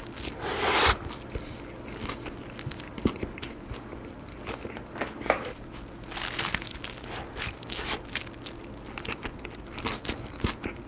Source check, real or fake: real